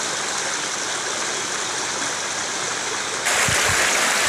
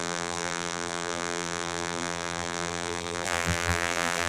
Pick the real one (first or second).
first